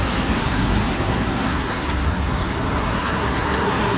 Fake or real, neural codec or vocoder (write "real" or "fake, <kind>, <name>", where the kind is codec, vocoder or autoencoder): fake, codec, SNAC